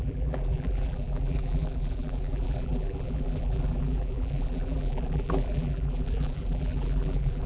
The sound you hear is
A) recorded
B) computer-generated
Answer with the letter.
B